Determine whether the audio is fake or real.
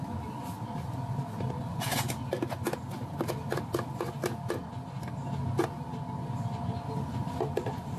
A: real